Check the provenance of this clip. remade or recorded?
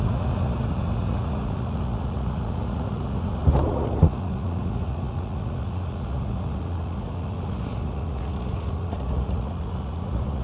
remade